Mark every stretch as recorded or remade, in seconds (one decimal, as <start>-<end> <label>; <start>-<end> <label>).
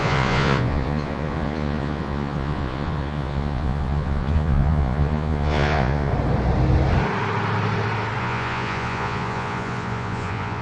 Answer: 0.0-6.1 remade; 6.1-8.2 recorded; 8.2-10.6 remade